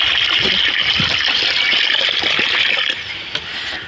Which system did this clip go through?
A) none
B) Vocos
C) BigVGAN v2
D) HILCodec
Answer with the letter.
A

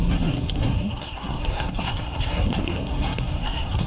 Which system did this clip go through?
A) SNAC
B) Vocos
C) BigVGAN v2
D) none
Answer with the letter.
A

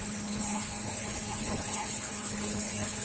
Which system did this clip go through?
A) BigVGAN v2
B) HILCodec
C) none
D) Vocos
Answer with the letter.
B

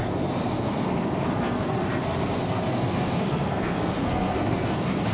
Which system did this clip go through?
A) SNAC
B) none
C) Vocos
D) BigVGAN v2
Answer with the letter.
A